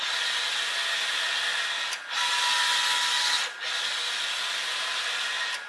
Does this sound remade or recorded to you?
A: recorded